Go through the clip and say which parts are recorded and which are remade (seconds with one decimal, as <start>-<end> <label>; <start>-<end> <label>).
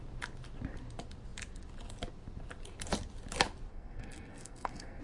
0.0-3.7 recorded; 3.7-5.0 remade